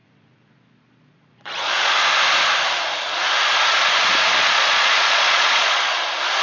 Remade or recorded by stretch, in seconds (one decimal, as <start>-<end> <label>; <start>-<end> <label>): 0.0-1.9 remade; 1.9-4.4 recorded; 4.4-5.9 remade; 5.9-6.4 recorded